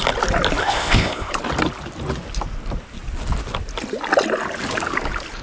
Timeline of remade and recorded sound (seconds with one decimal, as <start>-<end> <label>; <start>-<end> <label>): 0.0-0.6 recorded; 0.6-1.3 remade; 1.3-5.4 recorded